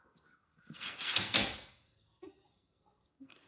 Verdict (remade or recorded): remade